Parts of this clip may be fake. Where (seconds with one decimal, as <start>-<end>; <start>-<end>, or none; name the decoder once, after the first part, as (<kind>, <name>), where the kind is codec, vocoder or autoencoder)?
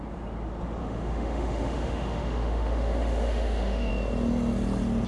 0.8-3.9 (autoencoder, DAC-VAE)